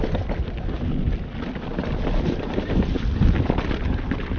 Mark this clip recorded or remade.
recorded